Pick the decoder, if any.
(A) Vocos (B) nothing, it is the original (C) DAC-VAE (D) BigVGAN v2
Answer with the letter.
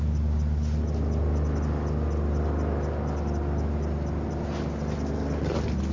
B